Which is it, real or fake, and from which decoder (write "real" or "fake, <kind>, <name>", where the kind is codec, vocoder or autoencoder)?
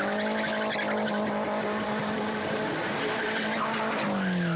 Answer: real